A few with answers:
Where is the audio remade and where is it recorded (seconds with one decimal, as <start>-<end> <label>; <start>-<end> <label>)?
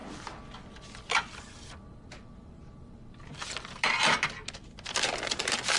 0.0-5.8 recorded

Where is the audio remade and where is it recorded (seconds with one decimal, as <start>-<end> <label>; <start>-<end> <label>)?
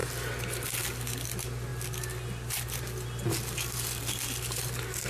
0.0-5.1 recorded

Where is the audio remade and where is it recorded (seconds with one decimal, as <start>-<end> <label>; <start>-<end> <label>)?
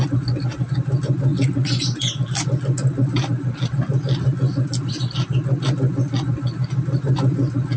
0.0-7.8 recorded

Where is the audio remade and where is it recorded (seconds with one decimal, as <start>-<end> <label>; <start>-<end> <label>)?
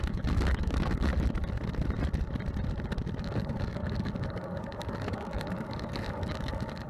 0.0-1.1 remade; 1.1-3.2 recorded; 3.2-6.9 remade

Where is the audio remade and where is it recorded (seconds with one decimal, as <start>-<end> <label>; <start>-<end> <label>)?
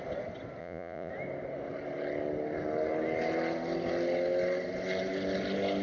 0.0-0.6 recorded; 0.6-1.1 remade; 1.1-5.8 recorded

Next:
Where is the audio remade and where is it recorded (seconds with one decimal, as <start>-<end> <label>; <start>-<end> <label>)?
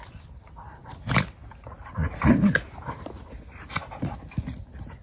0.0-5.0 recorded